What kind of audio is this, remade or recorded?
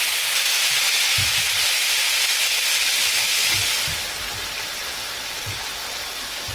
recorded